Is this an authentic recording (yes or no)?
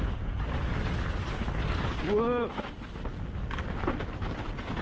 yes